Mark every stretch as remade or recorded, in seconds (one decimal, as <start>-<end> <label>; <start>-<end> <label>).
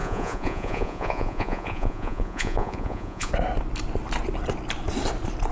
0.0-3.3 remade; 3.3-5.5 recorded